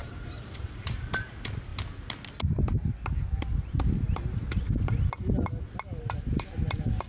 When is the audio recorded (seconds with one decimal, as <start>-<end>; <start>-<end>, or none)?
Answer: 1.1-7.1